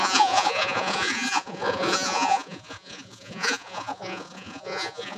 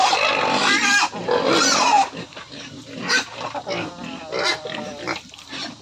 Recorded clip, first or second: second